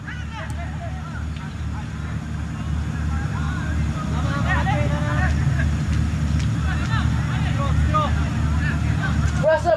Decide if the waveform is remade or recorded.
recorded